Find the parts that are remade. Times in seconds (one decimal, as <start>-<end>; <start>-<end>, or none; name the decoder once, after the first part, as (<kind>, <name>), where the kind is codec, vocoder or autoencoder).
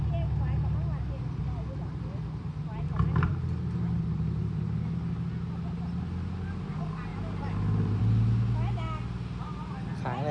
7.1-8.0 (vocoder, BigVGAN v2)